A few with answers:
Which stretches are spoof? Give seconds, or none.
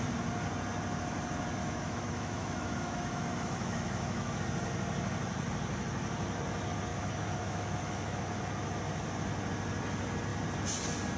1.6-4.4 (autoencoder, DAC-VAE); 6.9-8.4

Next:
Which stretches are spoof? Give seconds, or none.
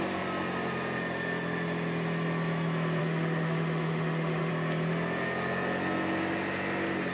3.0-4.5 (autoencoder, DAC-VAE)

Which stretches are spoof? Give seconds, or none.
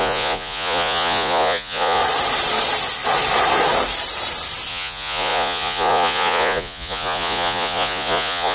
0.0-2.0 (vocoder, Vocos); 4.7-8.5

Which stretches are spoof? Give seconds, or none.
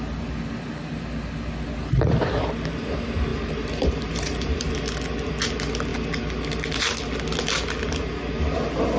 3.3-4.7 (vocoder, BigVGAN v2)